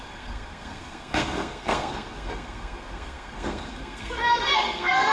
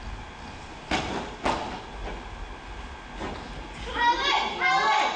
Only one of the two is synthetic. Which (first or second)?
first